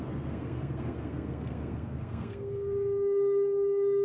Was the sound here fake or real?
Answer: fake